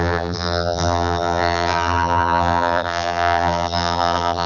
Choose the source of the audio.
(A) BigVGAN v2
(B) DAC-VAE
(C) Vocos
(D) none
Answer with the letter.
A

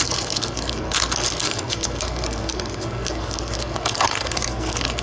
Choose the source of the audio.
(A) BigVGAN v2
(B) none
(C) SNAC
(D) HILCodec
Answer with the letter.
C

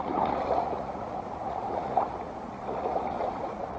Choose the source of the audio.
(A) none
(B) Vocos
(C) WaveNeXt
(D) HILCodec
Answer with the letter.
B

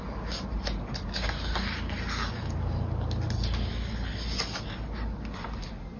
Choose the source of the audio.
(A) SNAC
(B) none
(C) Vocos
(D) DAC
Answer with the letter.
B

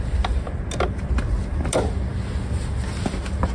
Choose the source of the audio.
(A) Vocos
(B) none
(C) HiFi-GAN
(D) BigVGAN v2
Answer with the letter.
B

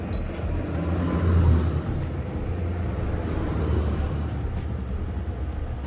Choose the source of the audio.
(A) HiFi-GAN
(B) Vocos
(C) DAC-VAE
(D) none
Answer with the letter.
D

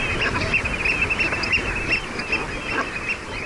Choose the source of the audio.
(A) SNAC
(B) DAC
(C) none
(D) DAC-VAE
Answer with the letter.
C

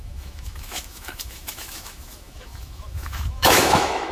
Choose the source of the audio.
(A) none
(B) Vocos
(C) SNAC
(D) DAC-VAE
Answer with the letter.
D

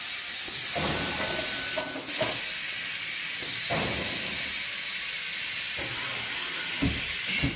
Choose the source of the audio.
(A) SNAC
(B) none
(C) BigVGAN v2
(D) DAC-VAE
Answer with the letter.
B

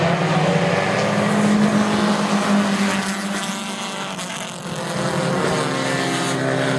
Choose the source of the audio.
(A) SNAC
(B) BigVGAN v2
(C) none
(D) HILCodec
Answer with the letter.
C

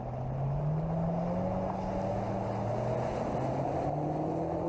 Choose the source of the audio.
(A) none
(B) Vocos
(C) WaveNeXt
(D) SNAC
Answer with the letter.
A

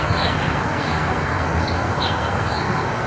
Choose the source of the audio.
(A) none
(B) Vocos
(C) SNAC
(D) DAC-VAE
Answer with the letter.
C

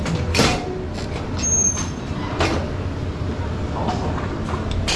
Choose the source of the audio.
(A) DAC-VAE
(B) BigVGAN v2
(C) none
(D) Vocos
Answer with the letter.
C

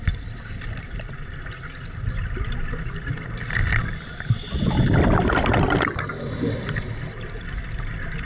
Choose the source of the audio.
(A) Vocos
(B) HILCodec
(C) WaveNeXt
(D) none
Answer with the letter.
D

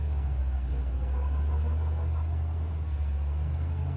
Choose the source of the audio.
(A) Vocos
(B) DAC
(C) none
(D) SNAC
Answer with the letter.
D